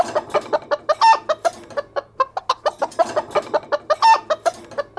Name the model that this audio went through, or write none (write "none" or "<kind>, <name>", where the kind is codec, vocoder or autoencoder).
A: none